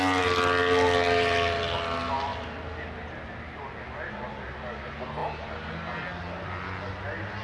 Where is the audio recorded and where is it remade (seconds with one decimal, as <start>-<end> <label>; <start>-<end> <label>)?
0.0-7.4 recorded